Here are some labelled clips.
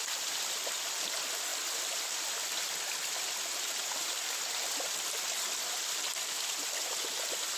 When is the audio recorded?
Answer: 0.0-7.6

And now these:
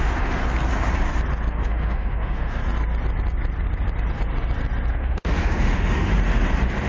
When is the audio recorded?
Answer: 0.4-1.5; 2.6-4.9; 6.1-6.9

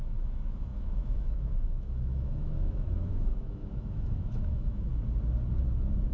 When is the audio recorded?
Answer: 4.9-6.1

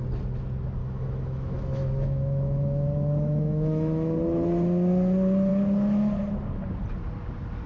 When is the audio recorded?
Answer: 0.0-0.8; 4.2-7.7